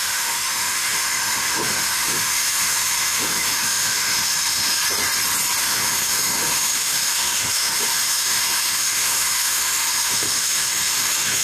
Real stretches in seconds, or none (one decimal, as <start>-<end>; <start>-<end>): 4.8-5.6